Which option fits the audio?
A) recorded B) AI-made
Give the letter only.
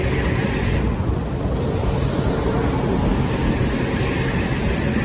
A